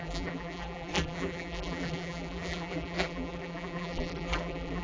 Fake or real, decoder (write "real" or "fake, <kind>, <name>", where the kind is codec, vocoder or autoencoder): fake, vocoder, BigVGAN v2